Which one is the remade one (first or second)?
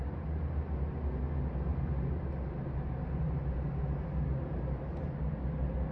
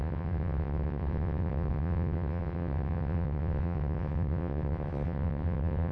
second